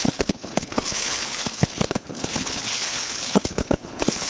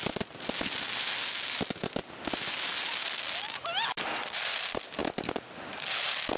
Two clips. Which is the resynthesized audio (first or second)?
first